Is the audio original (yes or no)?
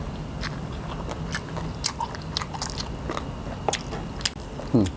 yes